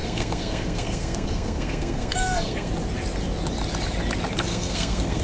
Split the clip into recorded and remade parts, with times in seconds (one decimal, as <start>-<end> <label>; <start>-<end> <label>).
0.0-2.7 remade; 2.7-4.5 recorded; 4.5-5.2 remade